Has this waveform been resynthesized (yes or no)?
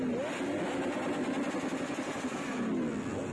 no